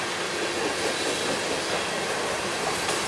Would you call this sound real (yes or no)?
yes